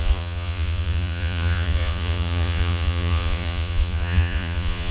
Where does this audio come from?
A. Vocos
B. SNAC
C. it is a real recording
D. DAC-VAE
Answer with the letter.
A